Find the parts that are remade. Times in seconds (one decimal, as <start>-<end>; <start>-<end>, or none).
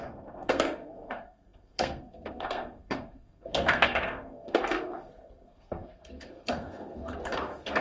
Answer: 0.0-7.8